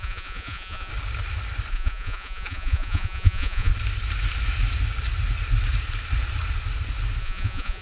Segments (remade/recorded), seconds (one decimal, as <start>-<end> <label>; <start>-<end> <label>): 0.0-0.9 remade; 0.9-1.7 recorded; 1.7-3.7 remade; 3.7-7.2 recorded; 7.2-7.8 remade